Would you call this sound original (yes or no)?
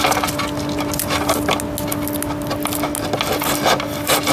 yes